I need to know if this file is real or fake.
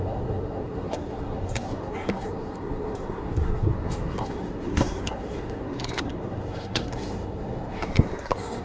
fake